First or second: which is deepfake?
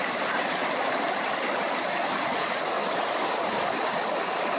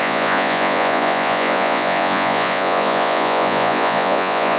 second